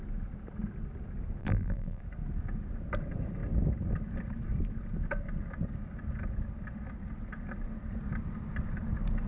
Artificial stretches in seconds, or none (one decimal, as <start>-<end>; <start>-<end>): 1.4-2.0